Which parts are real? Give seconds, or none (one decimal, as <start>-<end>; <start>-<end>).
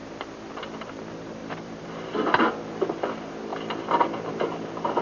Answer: 0.0-1.4; 2.5-5.0